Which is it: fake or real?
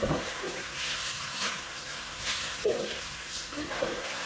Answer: fake